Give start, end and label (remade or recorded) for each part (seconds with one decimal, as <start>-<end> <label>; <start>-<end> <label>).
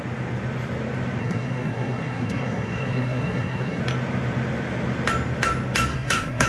0.0-1.2 recorded; 1.2-3.8 remade; 3.8-5.9 recorded; 5.9-6.5 remade